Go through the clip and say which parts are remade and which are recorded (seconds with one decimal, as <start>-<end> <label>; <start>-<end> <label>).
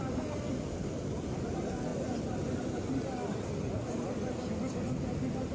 0.0-5.5 recorded